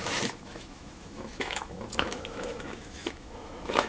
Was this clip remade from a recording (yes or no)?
yes